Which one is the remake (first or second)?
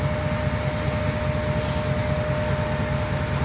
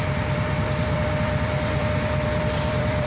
second